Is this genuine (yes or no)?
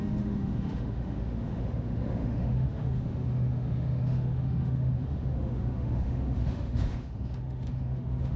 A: no